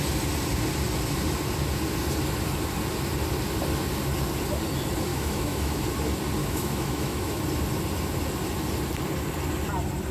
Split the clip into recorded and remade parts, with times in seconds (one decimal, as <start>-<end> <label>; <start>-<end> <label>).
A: 0.0-5.1 recorded; 5.1-5.8 remade; 5.8-6.4 recorded; 6.4-7.4 remade; 7.4-10.1 recorded

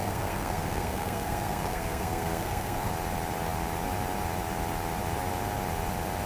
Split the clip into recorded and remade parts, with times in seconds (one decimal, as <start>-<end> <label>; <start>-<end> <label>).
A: 0.0-2.9 remade; 2.9-6.3 recorded

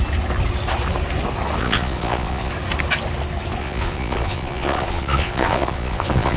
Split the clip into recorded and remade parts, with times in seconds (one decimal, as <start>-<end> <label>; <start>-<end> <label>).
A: 0.0-1.6 recorded; 1.6-2.5 remade; 2.5-3.6 recorded; 3.6-6.4 remade

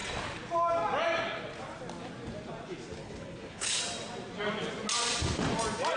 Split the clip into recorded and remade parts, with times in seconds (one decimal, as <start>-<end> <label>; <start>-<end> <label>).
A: 0.0-3.0 recorded; 3.0-3.8 remade; 3.8-6.0 recorded